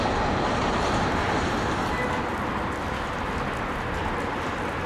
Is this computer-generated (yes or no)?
no